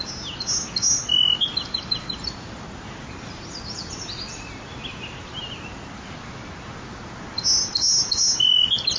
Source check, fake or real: real